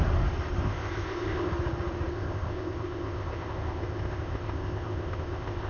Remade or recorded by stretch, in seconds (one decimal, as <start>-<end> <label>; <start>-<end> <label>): 0.0-0.6 recorded; 0.6-1.5 remade; 1.5-2.1 recorded; 2.1-5.7 remade